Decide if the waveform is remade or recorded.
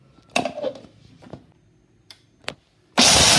recorded